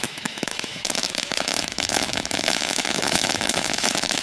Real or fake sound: fake